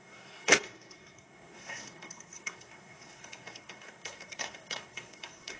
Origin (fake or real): fake